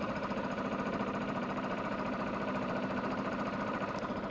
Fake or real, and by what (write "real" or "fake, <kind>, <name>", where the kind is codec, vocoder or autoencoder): fake, vocoder, BigVGAN v2